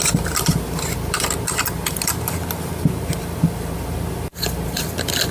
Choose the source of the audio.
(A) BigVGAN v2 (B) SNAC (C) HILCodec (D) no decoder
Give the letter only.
D